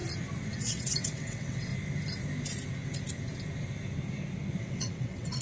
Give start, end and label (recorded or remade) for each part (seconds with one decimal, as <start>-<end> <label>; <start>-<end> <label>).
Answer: 0.0-0.6 recorded; 0.6-1.7 remade; 1.7-4.6 recorded; 4.6-5.4 remade